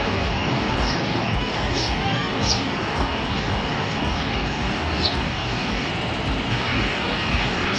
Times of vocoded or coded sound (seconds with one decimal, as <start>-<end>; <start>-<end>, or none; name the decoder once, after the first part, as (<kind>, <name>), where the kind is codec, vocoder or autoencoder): 0.0-5.9 (codec, DAC); 6.5-7.8